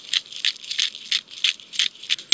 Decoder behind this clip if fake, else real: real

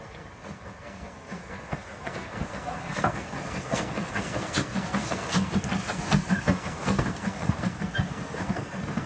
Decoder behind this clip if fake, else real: fake, codec, SNAC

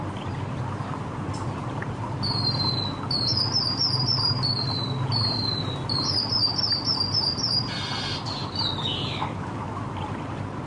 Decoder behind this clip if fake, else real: real